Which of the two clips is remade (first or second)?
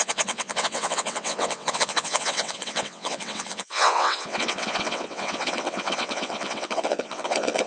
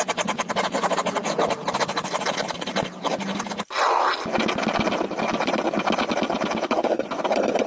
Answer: first